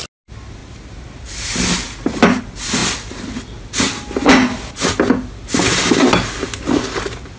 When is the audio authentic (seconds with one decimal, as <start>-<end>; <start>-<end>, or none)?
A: 0.0-7.4